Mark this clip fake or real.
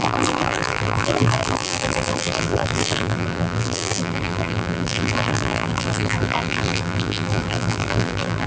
fake